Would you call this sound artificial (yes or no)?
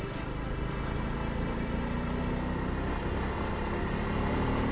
no